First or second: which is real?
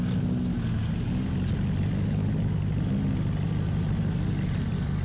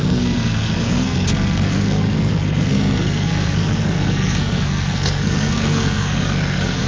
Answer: first